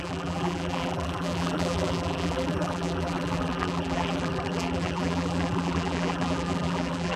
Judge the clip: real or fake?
fake